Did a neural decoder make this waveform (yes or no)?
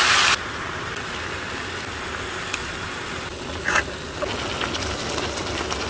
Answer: no